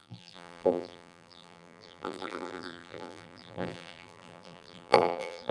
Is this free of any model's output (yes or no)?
no